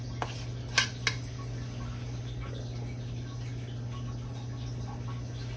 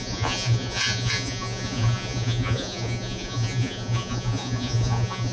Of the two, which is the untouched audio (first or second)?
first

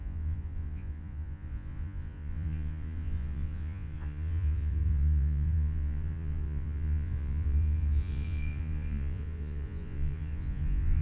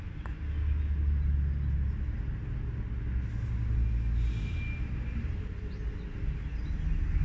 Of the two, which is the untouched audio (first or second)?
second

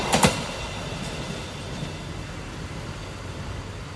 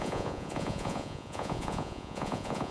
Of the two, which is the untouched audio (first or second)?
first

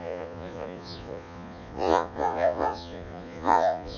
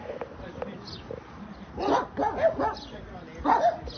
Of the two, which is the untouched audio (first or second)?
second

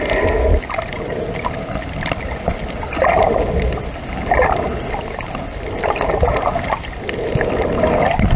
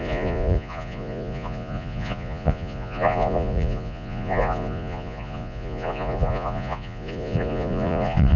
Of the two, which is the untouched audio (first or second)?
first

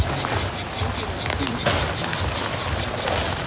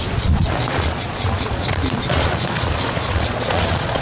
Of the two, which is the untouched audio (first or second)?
first